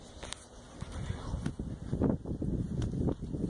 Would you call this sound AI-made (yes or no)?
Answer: no